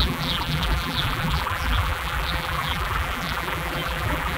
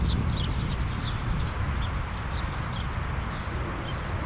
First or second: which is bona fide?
second